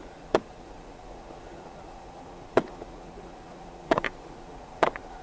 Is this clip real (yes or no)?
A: no